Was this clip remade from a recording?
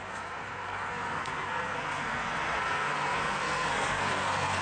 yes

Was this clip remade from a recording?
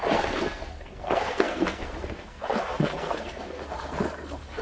yes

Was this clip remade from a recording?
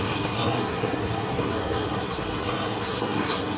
yes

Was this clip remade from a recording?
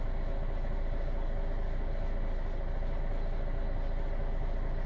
no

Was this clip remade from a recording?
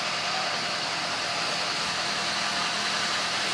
no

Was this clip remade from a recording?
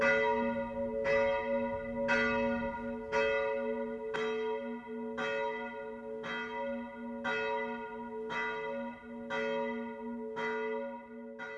no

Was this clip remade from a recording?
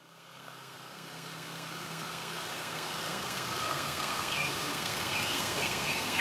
yes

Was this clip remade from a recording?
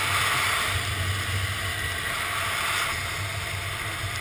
no